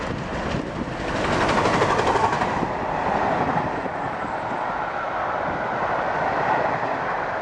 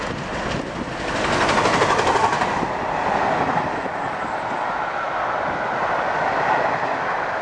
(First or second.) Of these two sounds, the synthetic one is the first